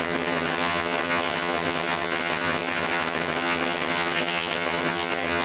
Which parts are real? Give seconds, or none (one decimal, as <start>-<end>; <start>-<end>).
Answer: none